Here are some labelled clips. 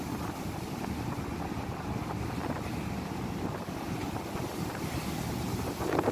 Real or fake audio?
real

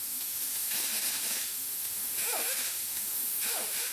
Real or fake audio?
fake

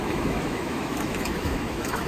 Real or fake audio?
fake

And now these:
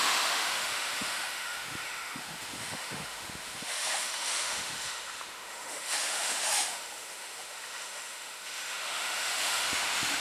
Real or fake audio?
fake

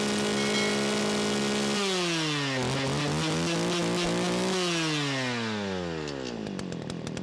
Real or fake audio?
real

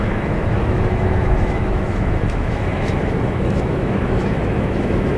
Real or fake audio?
fake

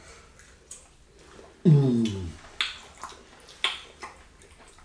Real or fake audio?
real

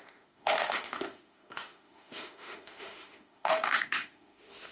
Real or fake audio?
fake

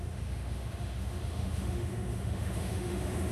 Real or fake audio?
fake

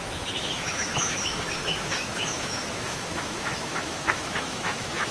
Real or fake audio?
fake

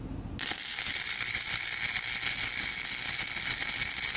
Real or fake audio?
real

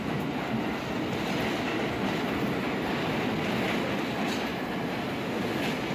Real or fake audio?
real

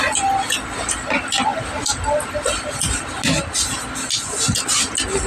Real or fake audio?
real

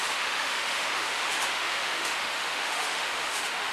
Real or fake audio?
fake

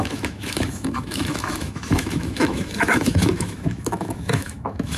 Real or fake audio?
fake